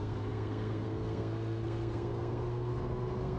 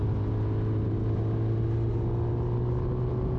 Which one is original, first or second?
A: second